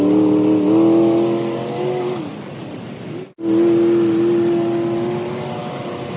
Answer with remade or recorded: recorded